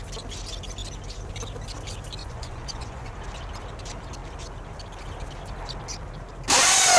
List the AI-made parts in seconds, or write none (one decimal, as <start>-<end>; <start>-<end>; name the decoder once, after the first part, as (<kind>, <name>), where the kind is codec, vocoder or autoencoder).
2.2-3.1 (vocoder, Vocos)